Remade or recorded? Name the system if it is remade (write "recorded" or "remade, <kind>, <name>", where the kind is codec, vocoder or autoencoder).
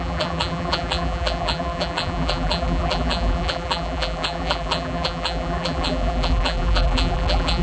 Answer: remade, vocoder, BigVGAN v2